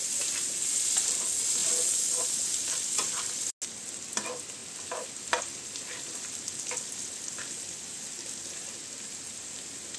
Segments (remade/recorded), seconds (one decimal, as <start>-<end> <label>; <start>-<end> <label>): 0.0-10.0 recorded